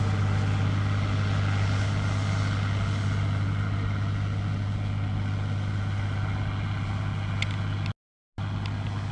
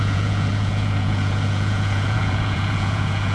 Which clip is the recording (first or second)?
first